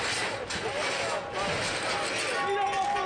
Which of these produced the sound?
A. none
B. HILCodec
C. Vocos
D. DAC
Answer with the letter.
A